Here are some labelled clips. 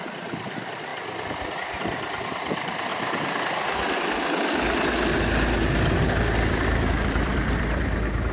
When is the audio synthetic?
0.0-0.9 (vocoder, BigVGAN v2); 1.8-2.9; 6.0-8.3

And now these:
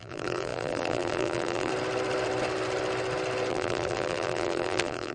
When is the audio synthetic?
0.0-1.7 (vocoder, BigVGAN v2); 3.5-5.1

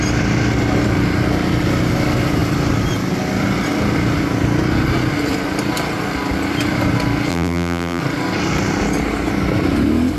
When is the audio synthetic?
7.3-8.0 (vocoder, BigVGAN v2)